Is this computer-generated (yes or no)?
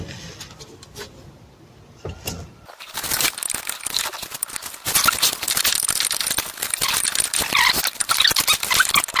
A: no